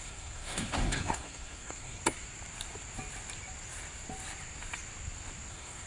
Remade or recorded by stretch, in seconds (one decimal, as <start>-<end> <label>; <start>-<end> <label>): 0.0-2.0 remade; 2.0-5.5 recorded; 5.5-5.9 remade